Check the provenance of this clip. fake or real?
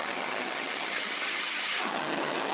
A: fake